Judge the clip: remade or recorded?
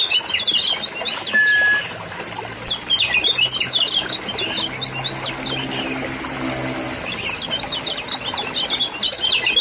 recorded